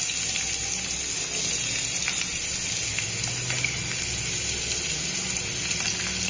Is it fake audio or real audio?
real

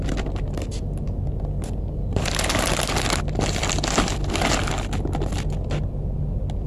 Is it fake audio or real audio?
real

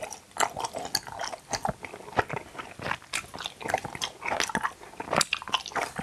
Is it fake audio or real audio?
real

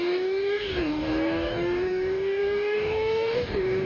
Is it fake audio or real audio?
fake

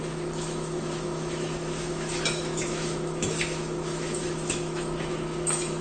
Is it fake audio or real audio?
fake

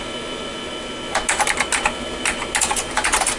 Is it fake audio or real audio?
real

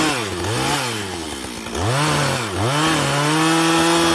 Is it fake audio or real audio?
real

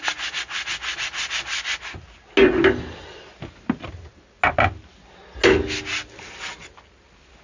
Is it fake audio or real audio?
real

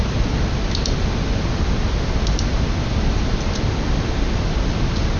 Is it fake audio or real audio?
real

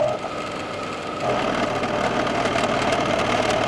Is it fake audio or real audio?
real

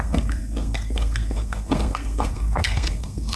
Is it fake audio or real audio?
fake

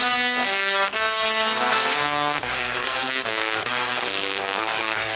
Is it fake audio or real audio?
fake